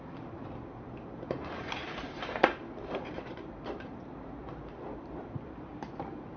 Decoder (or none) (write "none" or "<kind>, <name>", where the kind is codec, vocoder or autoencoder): vocoder, BigVGAN v2